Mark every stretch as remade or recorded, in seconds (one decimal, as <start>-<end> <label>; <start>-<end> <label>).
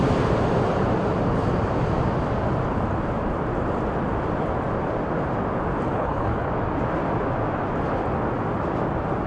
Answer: 0.0-5.9 recorded; 5.9-6.5 remade; 6.5-9.3 recorded